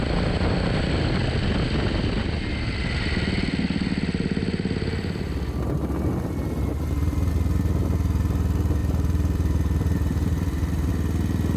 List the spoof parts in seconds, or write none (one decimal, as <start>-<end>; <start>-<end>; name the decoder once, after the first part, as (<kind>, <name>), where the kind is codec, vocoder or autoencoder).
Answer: 6.7-7.3 (vocoder, BigVGAN v2); 8.8-10.9